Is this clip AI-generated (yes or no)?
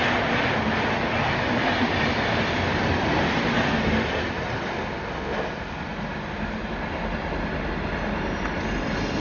no